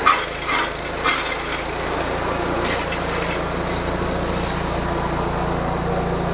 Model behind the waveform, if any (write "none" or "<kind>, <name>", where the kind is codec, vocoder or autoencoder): none